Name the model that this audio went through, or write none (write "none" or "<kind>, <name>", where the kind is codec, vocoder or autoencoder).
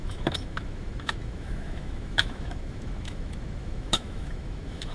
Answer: autoencoder, DAC-VAE